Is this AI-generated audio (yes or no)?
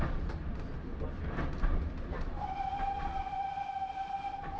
no